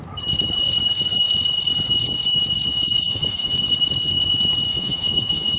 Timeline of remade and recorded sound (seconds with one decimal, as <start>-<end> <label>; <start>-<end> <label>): 0.0-2.7 recorded; 2.7-3.5 remade; 3.5-4.7 recorded; 4.7-5.6 remade